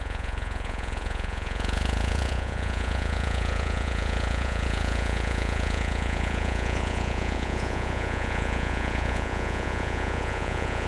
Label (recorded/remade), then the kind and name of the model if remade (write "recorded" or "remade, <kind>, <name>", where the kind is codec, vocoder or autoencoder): remade, vocoder, Vocos